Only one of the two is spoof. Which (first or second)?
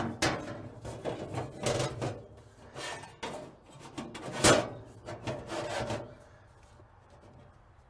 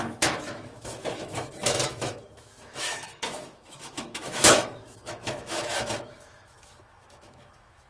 second